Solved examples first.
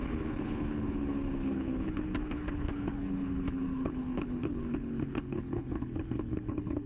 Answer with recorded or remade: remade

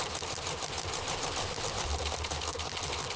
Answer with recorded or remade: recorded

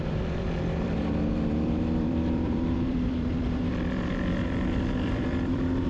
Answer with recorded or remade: remade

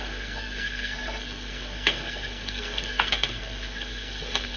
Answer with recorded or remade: remade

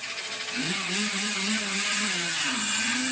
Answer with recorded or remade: remade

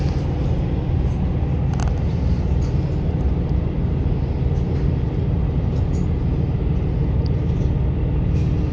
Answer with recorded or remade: recorded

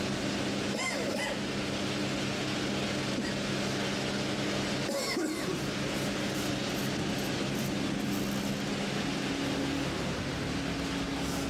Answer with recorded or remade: recorded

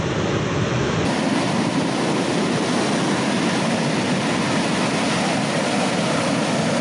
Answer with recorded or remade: recorded